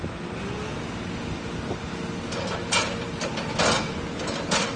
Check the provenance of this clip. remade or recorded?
recorded